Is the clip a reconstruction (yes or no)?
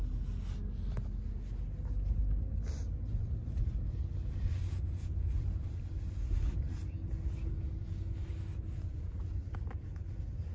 no